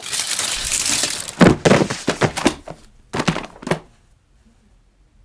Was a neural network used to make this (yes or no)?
no